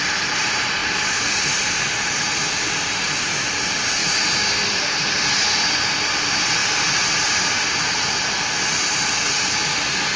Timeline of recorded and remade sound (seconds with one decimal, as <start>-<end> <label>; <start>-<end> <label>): 0.0-0.8 recorded; 0.8-1.3 remade; 1.3-10.2 recorded